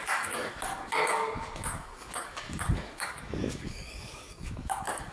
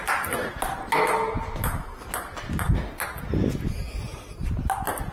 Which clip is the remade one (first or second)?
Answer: first